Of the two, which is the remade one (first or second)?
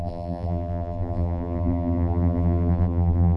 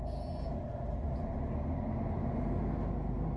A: first